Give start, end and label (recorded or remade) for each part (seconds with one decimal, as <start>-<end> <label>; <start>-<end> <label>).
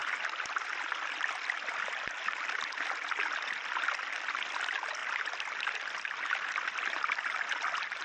0.0-5.0 recorded; 5.0-7.2 remade; 7.2-8.0 recorded